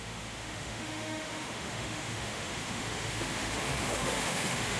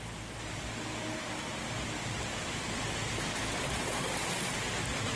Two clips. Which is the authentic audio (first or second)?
second